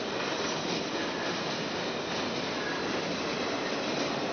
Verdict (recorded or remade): recorded